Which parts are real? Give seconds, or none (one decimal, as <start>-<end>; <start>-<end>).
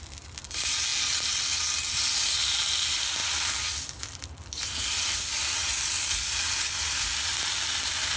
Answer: 0.0-8.2